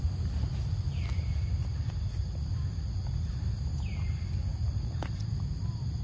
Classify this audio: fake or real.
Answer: real